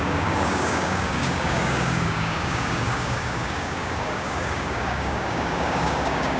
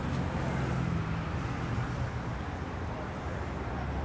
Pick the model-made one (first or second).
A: first